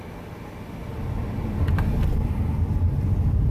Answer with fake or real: real